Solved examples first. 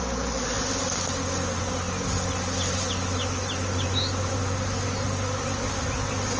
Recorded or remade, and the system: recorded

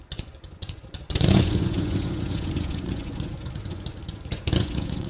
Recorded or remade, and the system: remade, vocoder, Vocos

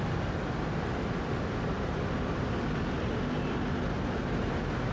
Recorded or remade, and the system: recorded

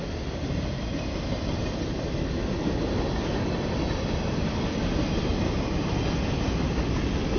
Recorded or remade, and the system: recorded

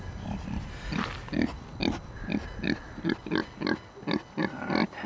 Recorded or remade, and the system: recorded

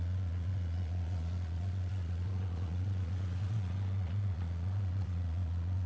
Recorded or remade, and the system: remade, vocoder, Vocos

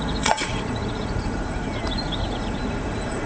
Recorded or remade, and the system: remade, vocoder, Vocos